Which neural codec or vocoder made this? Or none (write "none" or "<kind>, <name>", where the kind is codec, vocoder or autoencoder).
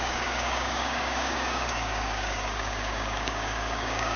codec, DAC